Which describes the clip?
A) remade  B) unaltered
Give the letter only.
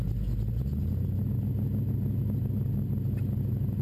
B